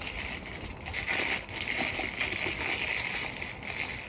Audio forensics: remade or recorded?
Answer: recorded